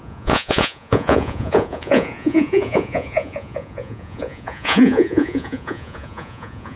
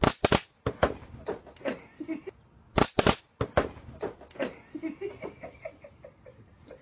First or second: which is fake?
first